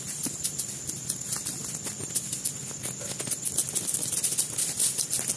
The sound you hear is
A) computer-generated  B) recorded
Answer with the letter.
B